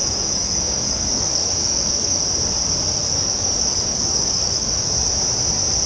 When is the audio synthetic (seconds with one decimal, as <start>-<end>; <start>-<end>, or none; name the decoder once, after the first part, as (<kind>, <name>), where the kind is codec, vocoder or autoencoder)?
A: 0.0-2.2 (codec, DAC); 3.0-4.9